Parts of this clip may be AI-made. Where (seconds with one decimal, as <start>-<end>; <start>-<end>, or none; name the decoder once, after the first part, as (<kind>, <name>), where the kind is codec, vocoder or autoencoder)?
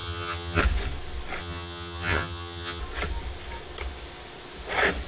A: 0.0-0.6 (vocoder, HiFi-GAN); 1.4-2.8